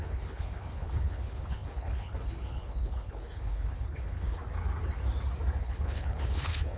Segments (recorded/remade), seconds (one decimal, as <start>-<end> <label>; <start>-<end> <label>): 0.0-4.4 remade; 4.4-5.6 recorded; 5.6-6.8 remade